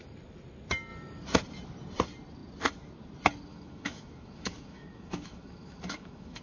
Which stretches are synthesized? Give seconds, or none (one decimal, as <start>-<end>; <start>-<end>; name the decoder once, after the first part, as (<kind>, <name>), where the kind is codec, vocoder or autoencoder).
3.5-6.4 (autoencoder, DAC-VAE)